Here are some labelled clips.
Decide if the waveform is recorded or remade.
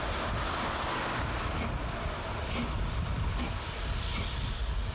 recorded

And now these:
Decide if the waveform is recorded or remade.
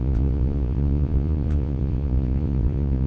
remade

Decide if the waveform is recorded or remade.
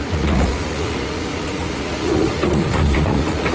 remade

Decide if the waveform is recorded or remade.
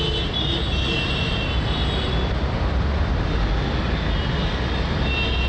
recorded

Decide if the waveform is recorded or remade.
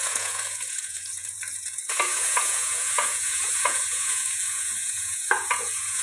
remade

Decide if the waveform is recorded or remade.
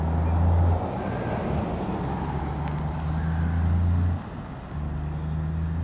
recorded